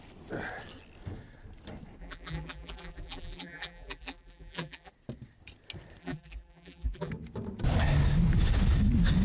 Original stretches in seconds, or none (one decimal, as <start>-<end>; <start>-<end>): 0.0-2.0; 4.9-6.0; 7.1-9.2